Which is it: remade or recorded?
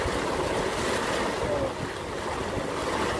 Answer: recorded